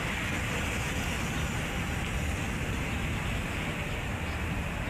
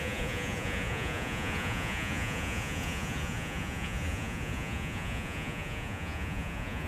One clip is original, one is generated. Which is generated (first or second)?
second